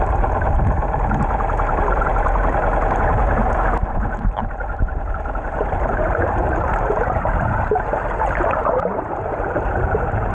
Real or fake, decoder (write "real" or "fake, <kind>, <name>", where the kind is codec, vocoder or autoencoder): fake, vocoder, BigVGAN v2